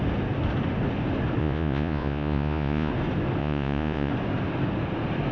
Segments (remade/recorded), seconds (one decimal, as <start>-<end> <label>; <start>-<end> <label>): 0.0-1.4 recorded; 1.4-2.9 remade; 2.9-3.4 recorded; 3.4-4.1 remade; 4.1-5.3 recorded